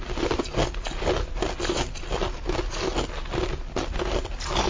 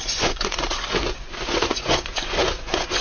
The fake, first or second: second